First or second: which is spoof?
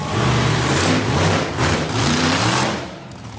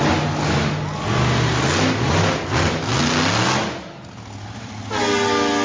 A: first